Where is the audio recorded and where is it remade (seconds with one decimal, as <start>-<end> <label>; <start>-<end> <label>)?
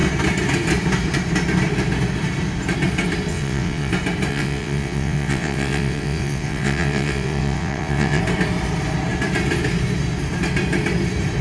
0.0-3.3 recorded; 3.3-3.9 remade; 3.9-4.3 recorded; 4.3-8.2 remade; 8.2-11.4 recorded